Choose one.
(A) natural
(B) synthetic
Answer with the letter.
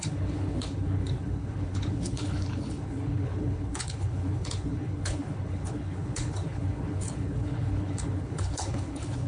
B